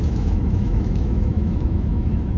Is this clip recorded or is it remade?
remade